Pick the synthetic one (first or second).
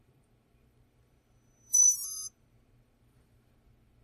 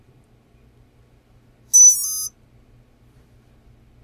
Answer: first